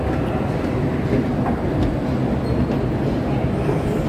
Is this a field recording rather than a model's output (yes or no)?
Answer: yes